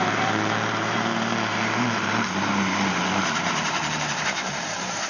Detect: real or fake fake